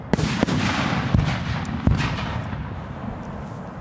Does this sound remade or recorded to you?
recorded